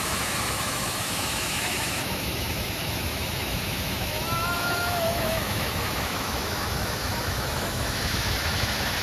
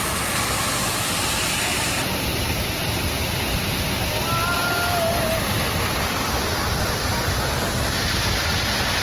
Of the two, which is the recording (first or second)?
second